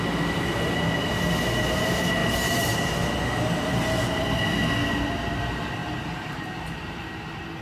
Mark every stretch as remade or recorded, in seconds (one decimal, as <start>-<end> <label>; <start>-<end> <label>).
0.0-5.8 recorded; 5.8-7.0 remade; 7.0-7.6 recorded